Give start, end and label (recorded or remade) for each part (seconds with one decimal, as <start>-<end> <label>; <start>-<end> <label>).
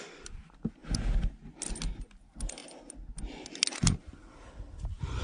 0.0-5.2 recorded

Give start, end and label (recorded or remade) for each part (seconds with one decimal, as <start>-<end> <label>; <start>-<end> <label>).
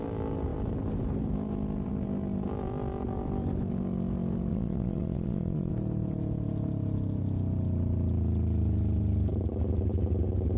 0.0-4.5 recorded; 4.5-5.7 remade; 5.7-10.6 recorded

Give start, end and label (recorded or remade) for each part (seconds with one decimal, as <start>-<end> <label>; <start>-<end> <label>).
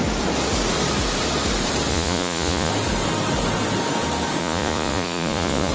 0.0-1.9 recorded; 1.9-2.7 remade; 2.7-4.4 recorded; 4.4-5.7 remade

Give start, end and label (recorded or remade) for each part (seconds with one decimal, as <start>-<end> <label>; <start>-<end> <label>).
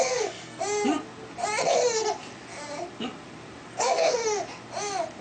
0.0-0.6 remade; 0.6-3.7 recorded; 3.7-4.2 remade; 4.2-5.2 recorded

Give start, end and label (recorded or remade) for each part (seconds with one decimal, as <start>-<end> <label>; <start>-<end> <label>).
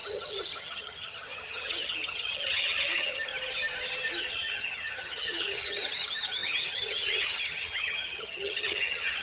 0.0-3.3 remade; 3.3-4.3 recorded; 4.3-9.2 remade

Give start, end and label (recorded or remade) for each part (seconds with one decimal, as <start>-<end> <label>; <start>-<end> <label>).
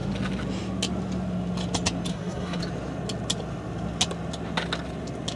0.0-2.1 recorded; 2.1-2.6 remade; 2.6-5.4 recorded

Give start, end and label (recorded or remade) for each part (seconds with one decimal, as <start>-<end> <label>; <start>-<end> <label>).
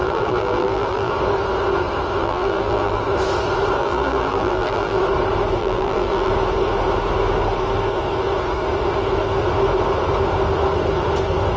0.0-1.1 remade; 1.1-2.2 recorded; 2.2-3.0 remade; 3.0-3.8 recorded; 3.8-5.0 remade; 5.0-5.6 recorded; 5.6-6.3 remade; 6.3-11.6 recorded